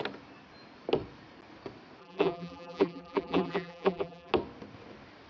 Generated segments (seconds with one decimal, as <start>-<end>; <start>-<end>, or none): 2.0-4.3